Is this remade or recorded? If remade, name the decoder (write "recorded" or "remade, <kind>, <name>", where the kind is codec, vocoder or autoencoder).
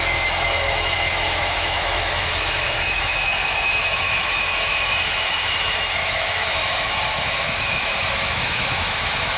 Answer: remade, autoencoder, DAC-VAE